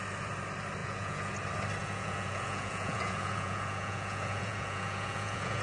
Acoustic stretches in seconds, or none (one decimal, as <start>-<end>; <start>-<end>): 0.0-0.8; 1.3-1.8